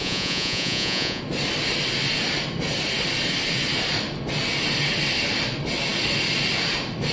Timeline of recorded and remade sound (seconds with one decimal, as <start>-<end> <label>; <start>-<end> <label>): 0.0-1.2 remade; 1.2-7.1 recorded